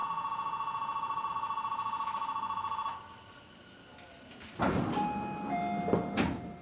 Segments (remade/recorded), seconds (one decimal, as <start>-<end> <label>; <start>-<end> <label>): 0.0-6.6 recorded